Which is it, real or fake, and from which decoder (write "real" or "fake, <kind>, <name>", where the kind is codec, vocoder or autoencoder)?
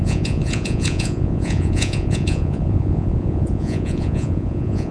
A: fake, vocoder, Vocos